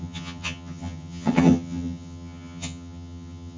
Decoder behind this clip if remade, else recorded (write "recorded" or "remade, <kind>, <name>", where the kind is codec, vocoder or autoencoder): remade, vocoder, HiFi-GAN